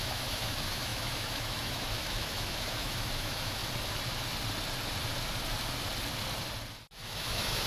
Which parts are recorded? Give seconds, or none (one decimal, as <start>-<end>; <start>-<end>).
3.6-6.9